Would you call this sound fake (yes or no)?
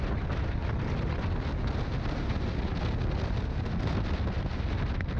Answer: no